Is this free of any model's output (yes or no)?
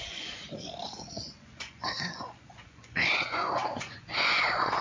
no